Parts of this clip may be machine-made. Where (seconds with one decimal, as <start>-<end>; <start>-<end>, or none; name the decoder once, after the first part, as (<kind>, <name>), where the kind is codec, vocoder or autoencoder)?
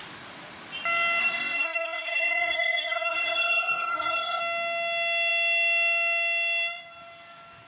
1.2-4.4 (codec, SNAC)